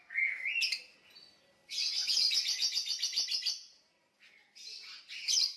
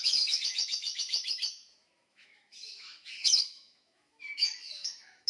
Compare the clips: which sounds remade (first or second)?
second